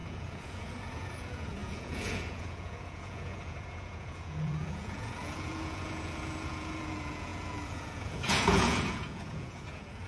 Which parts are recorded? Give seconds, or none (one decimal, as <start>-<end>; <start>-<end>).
none